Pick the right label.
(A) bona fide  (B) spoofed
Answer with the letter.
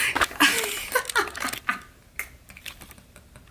A